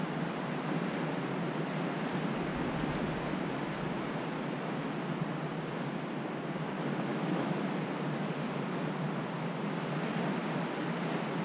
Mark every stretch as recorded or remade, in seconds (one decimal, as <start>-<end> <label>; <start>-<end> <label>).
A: 0.0-7.1 recorded; 7.1-7.6 remade; 7.6-11.4 recorded